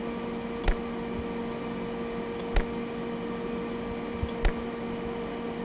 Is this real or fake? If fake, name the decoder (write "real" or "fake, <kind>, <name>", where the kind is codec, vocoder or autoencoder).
real